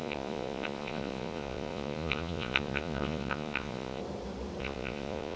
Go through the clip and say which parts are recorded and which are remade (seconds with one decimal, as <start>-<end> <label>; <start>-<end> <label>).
0.0-4.0 remade; 4.0-4.6 recorded; 4.6-5.4 remade

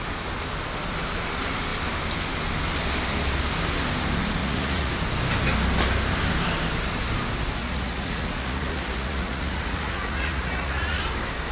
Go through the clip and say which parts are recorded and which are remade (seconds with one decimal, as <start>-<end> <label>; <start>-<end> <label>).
0.0-4.4 recorded; 4.4-4.9 remade; 4.9-7.6 recorded; 7.6-11.0 remade; 11.0-11.5 recorded

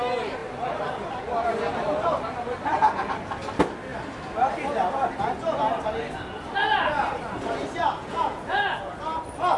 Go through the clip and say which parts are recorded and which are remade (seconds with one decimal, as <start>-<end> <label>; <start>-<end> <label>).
0.0-8.0 recorded; 8.0-8.9 remade; 8.9-9.6 recorded

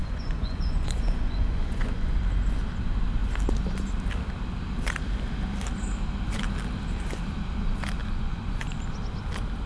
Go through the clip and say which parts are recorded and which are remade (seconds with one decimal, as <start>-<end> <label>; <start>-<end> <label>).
0.0-2.2 remade; 2.2-8.0 recorded; 8.0-8.7 remade; 8.7-9.7 recorded

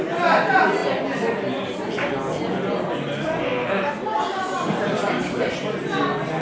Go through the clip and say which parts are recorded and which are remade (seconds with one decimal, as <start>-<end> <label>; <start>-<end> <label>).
0.0-6.4 recorded